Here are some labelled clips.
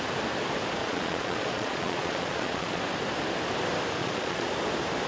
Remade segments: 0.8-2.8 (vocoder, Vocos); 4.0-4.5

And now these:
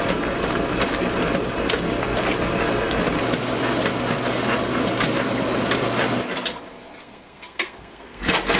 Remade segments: 7.0-8.2 (codec, SNAC)

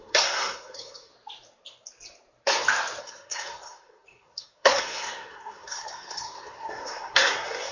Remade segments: 0.0-1.1 (codec, SNAC); 3.0-7.7

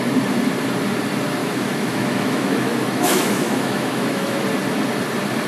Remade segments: 1.4-4.4 (autoencoder, DAC-VAE)

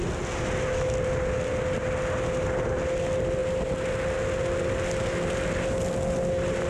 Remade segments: none